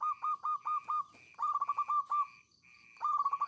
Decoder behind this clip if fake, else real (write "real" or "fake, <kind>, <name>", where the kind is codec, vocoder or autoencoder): real